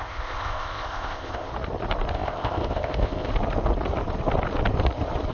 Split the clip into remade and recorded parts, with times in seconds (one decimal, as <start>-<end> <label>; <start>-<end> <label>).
0.0-1.5 remade; 1.5-2.1 recorded; 2.1-3.3 remade; 3.3-5.3 recorded